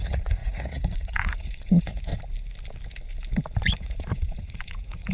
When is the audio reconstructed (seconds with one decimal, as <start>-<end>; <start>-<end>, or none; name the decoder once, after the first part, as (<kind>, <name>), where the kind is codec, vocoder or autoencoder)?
0.0-2.1 (vocoder, Vocos); 3.6-5.1